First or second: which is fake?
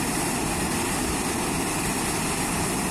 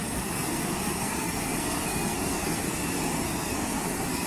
second